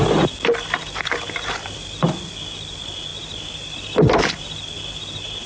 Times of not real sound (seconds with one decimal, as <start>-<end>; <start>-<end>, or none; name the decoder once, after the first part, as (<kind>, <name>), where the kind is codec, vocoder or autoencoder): none

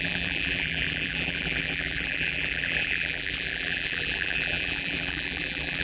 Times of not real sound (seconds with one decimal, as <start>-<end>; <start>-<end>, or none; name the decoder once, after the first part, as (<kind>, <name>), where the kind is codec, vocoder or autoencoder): 0.0-5.8 (vocoder, BigVGAN v2)